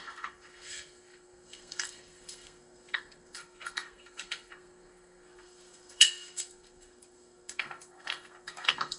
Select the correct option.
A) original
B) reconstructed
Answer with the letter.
B